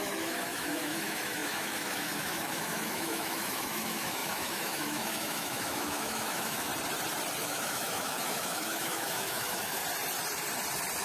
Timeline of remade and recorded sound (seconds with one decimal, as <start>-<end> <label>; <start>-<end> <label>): 0.0-6.7 remade; 6.7-7.4 recorded; 7.4-9.8 remade; 9.8-11.0 recorded